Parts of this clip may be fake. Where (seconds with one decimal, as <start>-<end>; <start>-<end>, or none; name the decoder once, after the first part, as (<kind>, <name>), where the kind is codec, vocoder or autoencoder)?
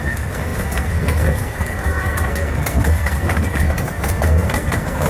0.0-5.1 (codec, SNAC)